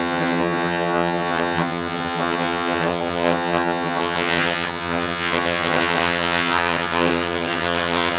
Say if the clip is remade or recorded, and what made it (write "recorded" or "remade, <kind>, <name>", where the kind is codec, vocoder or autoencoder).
remade, vocoder, HiFi-GAN